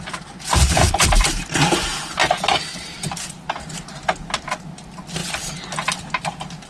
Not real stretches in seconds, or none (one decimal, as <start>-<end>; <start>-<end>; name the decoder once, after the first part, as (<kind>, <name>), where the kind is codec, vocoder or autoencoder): none